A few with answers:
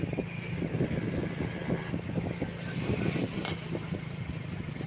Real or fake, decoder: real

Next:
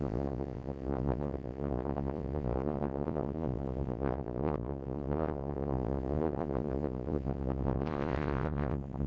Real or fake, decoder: fake, vocoder, Vocos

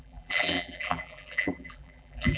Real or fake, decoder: fake, vocoder, BigVGAN v2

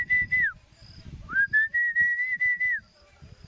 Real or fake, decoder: real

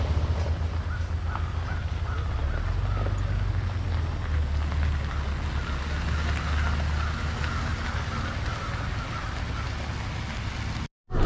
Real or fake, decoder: real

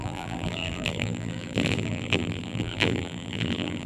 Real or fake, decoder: fake, vocoder, BigVGAN v2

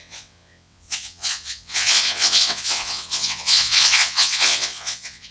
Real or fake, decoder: fake, vocoder, WaveNeXt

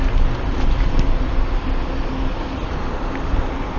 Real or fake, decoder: real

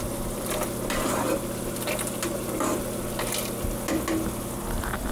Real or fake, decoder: real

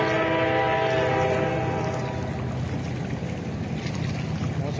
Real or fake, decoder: real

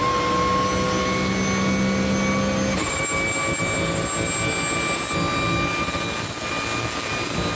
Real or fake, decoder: real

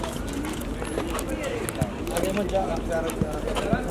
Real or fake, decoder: real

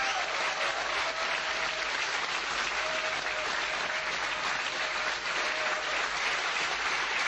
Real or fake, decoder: real